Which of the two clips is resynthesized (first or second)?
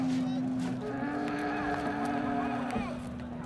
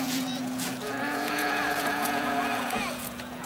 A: second